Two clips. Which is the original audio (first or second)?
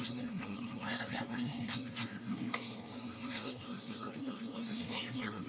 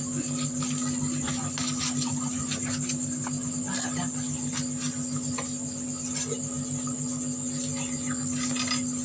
second